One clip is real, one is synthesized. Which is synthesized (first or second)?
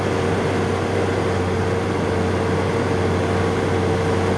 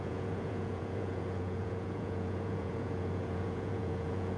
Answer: second